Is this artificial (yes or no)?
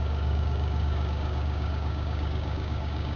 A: yes